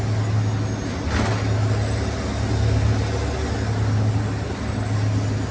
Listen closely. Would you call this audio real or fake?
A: real